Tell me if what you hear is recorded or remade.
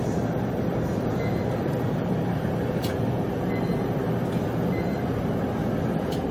remade